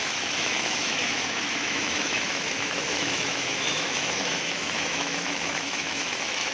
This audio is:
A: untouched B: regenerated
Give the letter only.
B